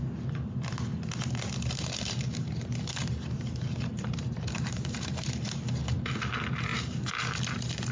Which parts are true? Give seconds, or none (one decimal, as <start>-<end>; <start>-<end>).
0.0-0.9; 5.6-6.7; 7.2-7.9